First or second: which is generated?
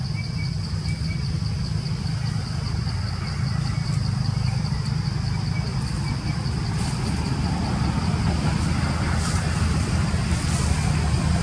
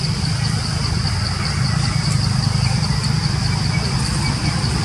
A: second